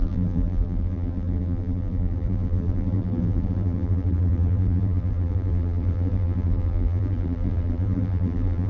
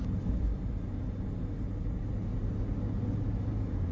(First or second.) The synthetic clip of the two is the first